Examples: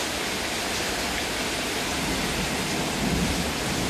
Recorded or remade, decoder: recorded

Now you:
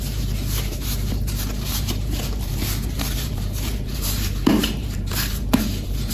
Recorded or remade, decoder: remade, vocoder, BigVGAN v2